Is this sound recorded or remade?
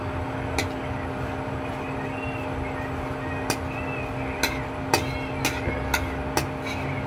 recorded